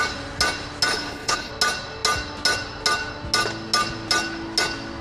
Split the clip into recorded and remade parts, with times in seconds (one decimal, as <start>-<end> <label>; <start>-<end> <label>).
0.0-0.9 recorded; 0.9-1.5 remade; 1.5-5.0 recorded